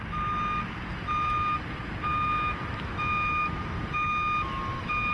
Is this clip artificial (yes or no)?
no